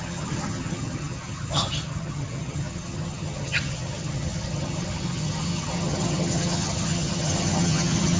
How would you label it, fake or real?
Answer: fake